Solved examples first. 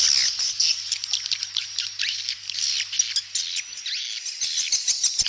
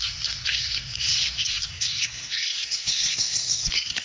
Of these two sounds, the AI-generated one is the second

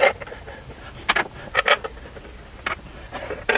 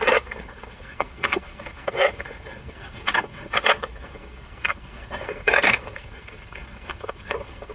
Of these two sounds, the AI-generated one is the second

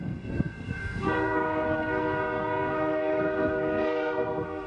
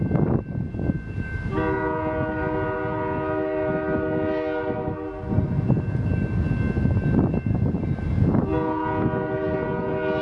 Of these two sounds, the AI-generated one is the first